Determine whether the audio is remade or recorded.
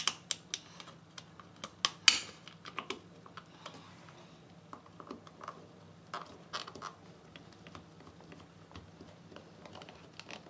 recorded